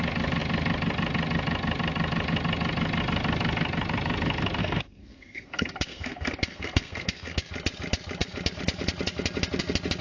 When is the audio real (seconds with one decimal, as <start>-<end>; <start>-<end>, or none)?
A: 0.0-4.6; 7.5-10.0